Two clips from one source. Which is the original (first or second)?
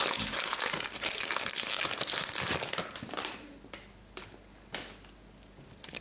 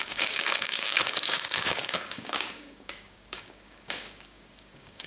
first